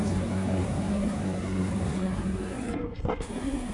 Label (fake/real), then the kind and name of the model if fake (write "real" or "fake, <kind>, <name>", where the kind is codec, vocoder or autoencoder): fake, codec, SNAC